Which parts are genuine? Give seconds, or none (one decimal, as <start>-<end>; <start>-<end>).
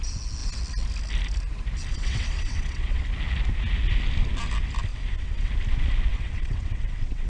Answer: 0.0-1.9; 3.0-4.9; 5.5-6.1